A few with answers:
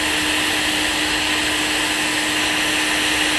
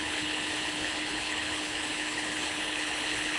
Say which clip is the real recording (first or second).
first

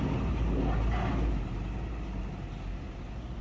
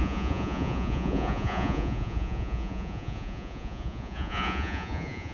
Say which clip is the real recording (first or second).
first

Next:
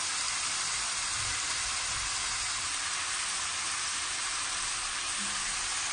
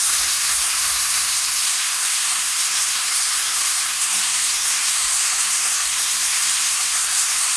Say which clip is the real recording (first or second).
first